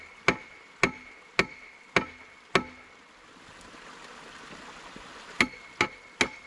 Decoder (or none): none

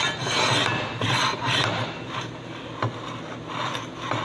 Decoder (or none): none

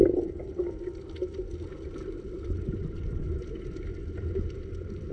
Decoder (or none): none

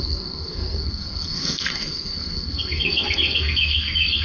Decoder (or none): codec, SNAC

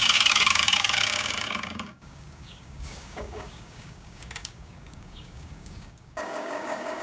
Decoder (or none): codec, DAC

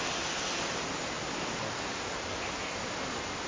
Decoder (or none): none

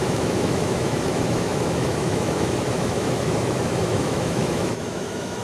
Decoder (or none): autoencoder, DAC-VAE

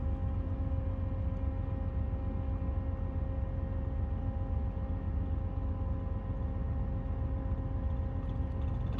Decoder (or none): none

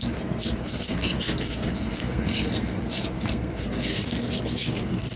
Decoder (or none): codec, SNAC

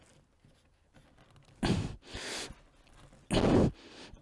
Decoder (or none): none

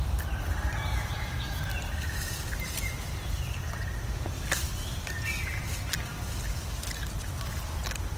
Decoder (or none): none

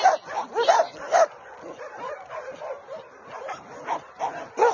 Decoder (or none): none